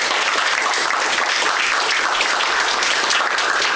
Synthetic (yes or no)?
no